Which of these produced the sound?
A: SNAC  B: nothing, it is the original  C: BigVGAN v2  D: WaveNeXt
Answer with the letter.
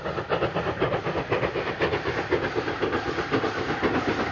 B